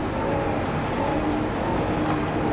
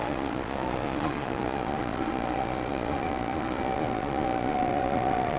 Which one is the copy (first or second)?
second